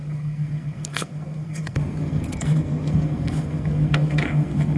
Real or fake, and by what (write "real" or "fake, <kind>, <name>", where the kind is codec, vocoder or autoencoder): fake, codec, SNAC